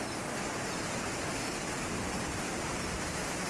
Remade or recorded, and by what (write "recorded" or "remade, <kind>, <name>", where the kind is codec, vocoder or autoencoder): recorded